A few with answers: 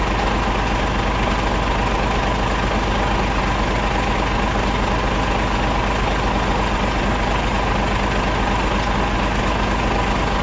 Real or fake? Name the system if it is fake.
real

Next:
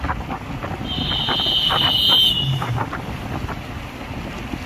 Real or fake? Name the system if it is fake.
real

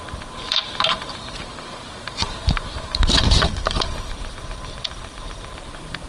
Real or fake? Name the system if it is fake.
fake, vocoder, BigVGAN v2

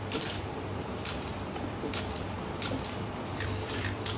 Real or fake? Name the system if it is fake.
fake, vocoder, BigVGAN v2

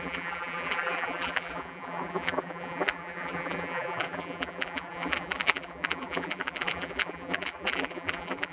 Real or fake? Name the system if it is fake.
fake, vocoder, BigVGAN v2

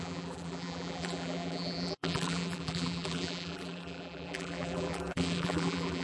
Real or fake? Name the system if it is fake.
fake, vocoder, BigVGAN v2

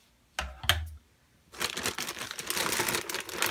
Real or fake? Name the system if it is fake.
real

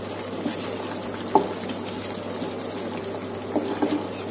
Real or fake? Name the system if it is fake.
real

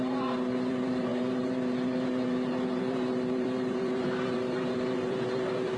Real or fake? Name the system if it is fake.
fake, vocoder, BigVGAN v2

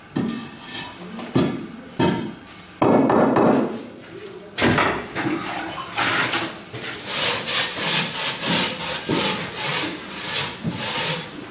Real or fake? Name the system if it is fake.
real